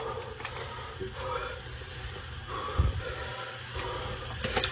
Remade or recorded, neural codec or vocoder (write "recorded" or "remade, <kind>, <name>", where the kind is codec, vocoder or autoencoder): recorded